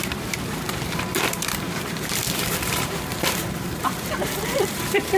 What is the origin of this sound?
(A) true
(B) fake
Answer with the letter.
B